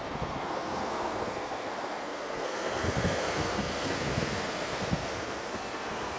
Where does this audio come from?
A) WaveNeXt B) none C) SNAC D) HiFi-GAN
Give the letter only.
C